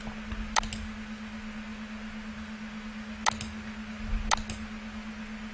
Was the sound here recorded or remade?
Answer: recorded